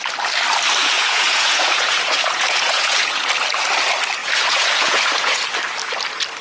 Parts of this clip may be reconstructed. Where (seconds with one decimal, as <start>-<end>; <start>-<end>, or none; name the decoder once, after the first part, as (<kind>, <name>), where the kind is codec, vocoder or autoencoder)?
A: 0.8-3.3 (vocoder, Vocos); 4.2-5.4